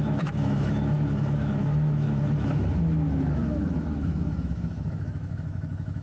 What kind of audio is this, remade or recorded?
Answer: remade